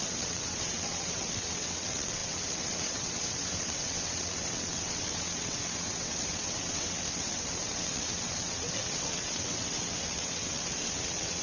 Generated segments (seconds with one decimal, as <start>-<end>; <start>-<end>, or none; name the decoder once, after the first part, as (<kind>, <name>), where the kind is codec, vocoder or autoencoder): 0.0-11.4 (vocoder, WaveNeXt)